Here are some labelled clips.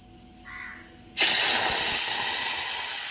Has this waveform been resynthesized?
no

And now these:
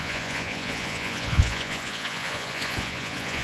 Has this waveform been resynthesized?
yes